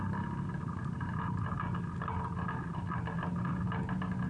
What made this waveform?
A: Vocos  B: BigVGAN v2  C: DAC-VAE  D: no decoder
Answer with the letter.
D